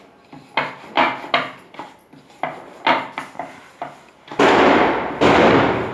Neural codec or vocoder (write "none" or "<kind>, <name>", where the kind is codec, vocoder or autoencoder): none